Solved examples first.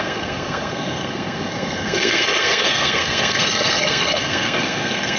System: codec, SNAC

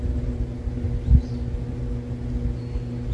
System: none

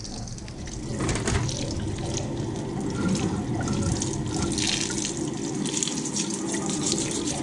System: none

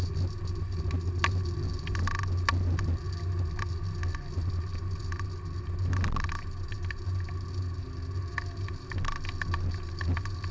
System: none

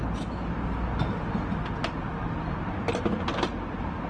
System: none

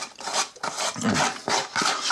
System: none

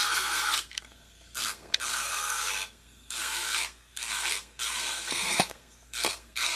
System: codec, SNAC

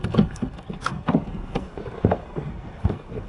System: codec, SNAC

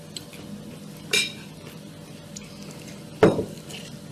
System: none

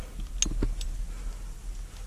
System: none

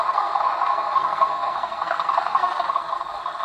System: codec, SNAC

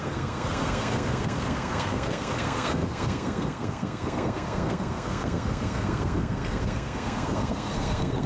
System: codec, SNAC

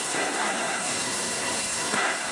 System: codec, SNAC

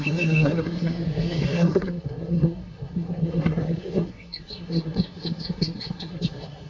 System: codec, SNAC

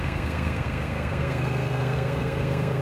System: codec, SNAC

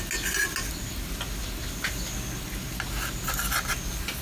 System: none